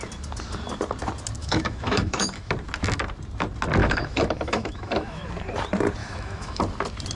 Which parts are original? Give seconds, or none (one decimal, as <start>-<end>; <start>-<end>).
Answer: 0.0-1.4; 2.5-3.8; 5.3-6.0; 6.6-7.2

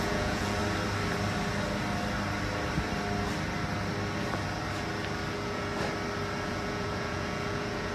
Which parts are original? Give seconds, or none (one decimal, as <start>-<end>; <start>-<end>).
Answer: 0.6-5.3; 5.7-6.4

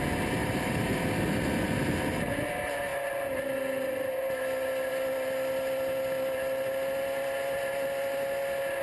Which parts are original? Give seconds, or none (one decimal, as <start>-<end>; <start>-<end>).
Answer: 0.0-0.4; 1.0-8.8

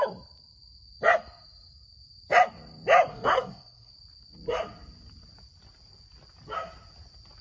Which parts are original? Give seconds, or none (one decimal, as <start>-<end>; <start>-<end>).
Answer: 0.0-3.1; 3.9-7.4